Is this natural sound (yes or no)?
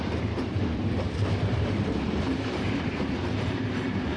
no